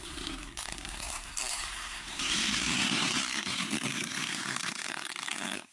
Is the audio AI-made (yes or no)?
yes